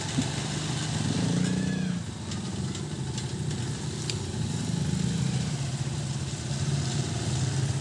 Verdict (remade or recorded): recorded